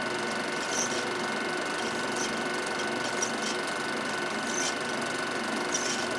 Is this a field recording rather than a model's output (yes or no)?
yes